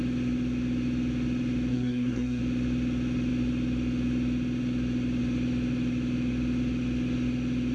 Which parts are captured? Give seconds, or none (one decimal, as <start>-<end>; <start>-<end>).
0.0-1.7; 2.4-7.7

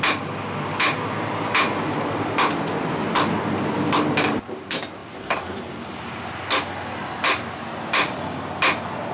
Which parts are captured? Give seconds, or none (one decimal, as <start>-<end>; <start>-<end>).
0.0-9.1